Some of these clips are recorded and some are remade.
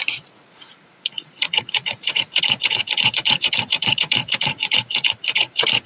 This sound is remade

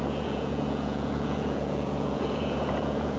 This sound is remade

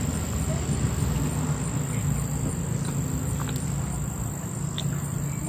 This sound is recorded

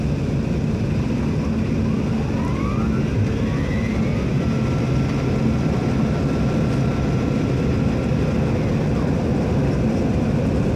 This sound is recorded